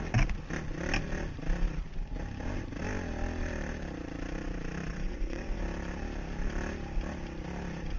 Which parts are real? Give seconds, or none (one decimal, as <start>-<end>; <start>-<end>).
0.0-4.9; 5.6-8.0